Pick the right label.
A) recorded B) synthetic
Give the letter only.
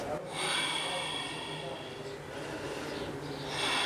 A